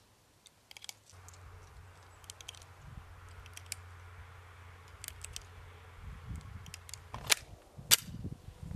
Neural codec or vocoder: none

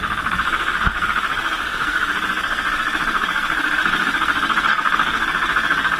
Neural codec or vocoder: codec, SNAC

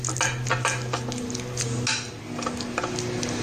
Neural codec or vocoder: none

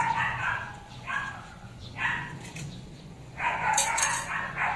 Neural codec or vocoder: vocoder, Vocos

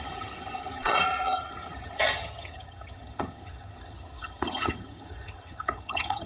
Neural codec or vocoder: vocoder, HiFi-GAN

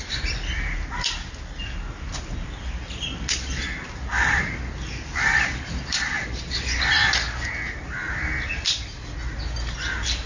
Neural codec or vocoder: none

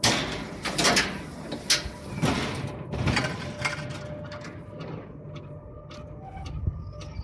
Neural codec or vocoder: none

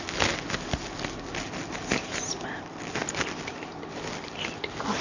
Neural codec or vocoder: none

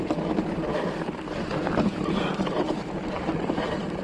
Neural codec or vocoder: vocoder, BigVGAN v2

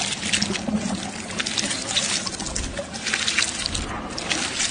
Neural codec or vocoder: none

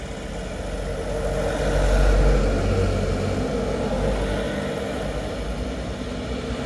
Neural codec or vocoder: none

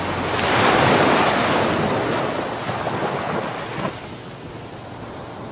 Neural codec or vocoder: none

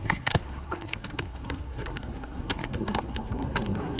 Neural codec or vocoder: codec, SNAC